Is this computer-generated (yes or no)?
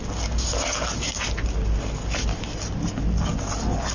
no